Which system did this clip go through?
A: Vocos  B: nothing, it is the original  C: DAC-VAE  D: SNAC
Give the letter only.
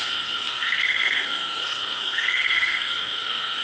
D